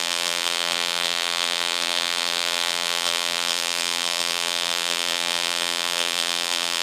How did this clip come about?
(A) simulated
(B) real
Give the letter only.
A